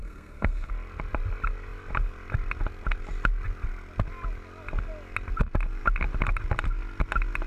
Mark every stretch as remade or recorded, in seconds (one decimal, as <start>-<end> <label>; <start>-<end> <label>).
0.0-0.7 remade; 0.7-7.5 recorded